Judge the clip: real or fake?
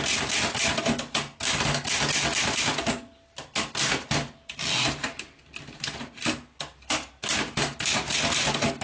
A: real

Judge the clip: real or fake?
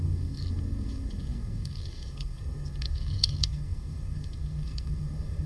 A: fake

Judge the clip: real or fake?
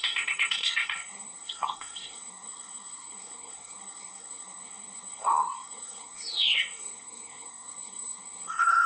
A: fake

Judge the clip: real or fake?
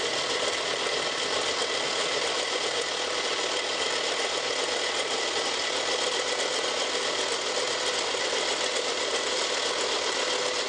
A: real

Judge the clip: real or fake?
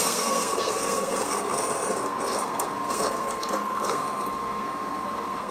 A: fake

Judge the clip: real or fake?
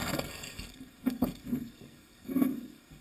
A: fake